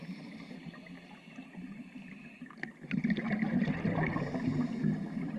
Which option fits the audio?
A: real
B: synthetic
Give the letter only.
A